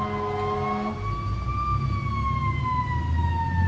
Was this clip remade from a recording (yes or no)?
no